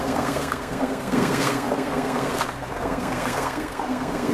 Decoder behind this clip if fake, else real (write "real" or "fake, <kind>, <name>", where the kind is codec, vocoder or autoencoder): fake, codec, SNAC